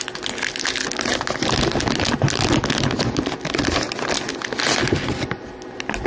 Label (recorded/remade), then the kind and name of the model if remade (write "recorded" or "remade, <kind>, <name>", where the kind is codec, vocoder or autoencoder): recorded